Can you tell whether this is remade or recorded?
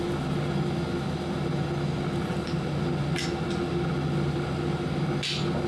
recorded